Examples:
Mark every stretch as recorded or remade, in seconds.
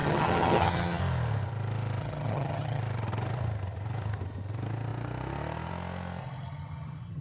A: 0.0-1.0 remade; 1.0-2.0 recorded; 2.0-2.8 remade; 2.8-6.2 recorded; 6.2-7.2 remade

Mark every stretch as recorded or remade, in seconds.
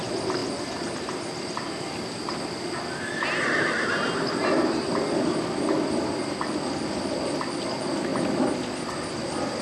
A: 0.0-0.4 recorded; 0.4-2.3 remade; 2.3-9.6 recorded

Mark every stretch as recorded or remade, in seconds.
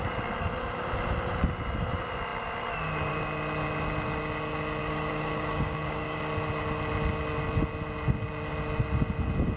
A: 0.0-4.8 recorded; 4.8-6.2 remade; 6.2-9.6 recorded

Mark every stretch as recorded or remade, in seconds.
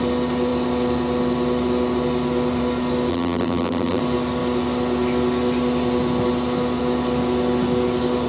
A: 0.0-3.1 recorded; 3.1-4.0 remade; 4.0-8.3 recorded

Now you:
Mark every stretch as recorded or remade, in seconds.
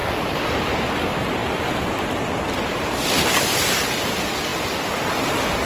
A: 0.0-0.9 remade; 0.9-5.7 recorded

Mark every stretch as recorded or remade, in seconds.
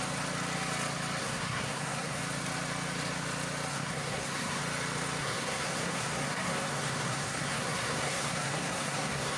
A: 0.0-1.2 recorded; 1.2-2.2 remade; 2.2-3.7 recorded; 3.7-4.6 remade; 4.6-5.2 recorded; 5.2-9.4 remade